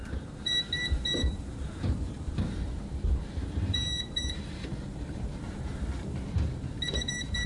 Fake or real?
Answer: fake